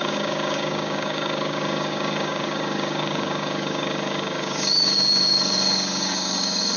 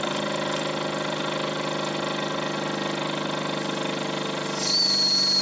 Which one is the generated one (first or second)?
first